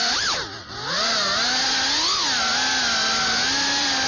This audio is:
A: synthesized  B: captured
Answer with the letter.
B